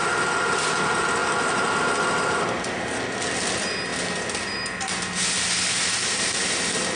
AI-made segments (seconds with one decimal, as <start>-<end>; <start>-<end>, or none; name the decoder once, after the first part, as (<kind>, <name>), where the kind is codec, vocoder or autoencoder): none